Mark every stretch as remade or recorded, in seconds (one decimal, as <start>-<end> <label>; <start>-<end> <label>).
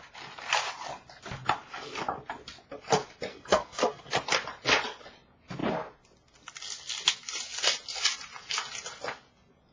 0.0-3.3 recorded; 3.3-4.0 remade; 4.0-9.7 recorded